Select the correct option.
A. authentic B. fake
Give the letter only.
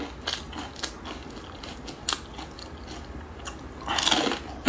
A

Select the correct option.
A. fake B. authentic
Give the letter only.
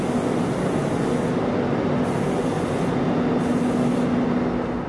B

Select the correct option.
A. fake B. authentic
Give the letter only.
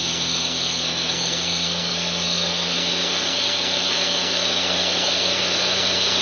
A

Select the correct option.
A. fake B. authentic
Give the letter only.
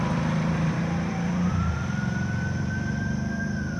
A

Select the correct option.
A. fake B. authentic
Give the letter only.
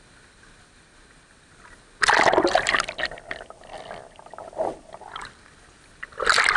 B